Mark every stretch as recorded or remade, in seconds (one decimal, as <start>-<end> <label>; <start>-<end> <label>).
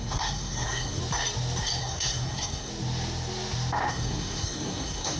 0.0-1.0 remade; 1.0-1.8 recorded; 1.8-2.7 remade; 2.7-3.9 recorded; 3.9-5.2 remade